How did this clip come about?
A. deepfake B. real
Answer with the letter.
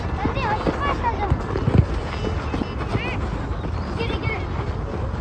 B